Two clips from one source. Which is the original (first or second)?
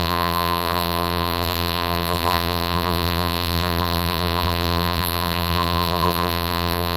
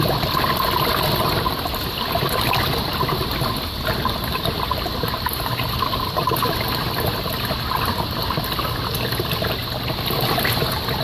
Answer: second